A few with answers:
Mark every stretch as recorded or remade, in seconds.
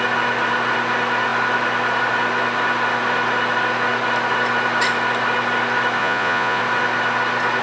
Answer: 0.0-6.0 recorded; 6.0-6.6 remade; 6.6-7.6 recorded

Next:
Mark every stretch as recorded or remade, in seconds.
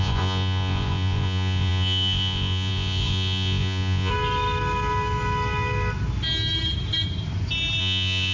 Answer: 0.0-4.1 remade; 4.1-7.8 recorded; 7.8-8.3 remade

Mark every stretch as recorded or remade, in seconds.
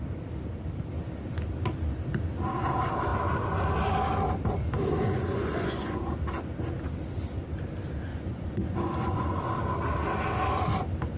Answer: 0.0-4.9 recorded; 4.9-6.1 remade; 6.1-8.1 recorded; 8.1-9.4 remade; 9.4-11.2 recorded